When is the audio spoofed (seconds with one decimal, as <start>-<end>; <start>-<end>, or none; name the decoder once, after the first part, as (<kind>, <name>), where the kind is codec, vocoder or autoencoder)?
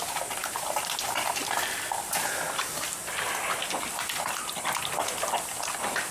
none